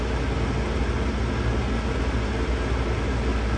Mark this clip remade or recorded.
recorded